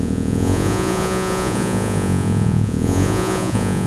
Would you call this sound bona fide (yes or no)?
no